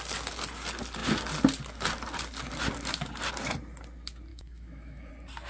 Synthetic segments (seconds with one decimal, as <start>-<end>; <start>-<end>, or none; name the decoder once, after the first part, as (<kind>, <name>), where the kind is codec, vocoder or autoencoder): 4.3-5.1 (autoencoder, DAC-VAE)